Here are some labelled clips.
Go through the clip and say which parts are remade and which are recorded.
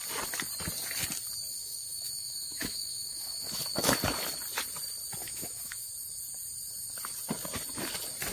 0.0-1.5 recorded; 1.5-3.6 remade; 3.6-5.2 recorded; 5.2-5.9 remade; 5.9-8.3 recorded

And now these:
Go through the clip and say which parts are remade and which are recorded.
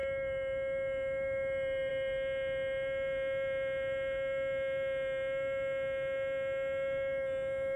0.0-7.8 recorded